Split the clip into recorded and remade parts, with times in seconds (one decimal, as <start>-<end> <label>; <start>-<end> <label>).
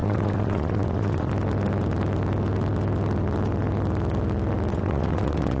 0.0-1.3 remade; 1.3-4.7 recorded; 4.7-5.6 remade